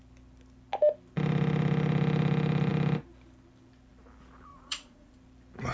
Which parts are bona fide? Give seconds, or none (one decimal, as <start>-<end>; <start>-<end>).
0.0-4.5; 5.1-5.7